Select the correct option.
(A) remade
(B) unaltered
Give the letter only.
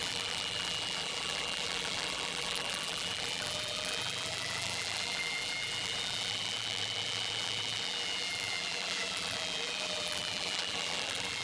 A